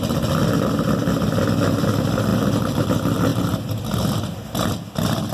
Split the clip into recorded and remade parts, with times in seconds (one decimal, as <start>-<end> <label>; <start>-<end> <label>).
0.0-5.3 remade